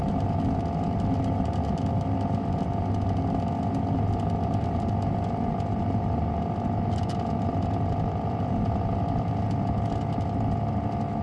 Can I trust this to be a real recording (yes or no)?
yes